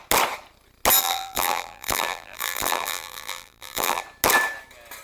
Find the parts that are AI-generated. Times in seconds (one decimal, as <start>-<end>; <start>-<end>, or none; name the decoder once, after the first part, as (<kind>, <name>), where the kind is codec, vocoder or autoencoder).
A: 1.0-4.0 (vocoder, BigVGAN v2)